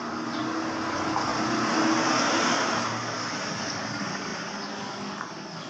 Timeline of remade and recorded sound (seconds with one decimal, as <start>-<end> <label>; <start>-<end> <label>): 0.0-0.4 remade; 0.4-0.9 recorded; 0.9-1.3 remade; 1.3-3.0 recorded; 3.0-5.7 remade